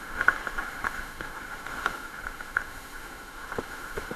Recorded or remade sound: remade